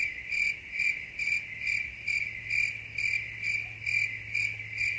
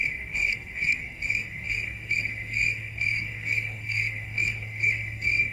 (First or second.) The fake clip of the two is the second